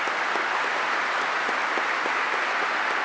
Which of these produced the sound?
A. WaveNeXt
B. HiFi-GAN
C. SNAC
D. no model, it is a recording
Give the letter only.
D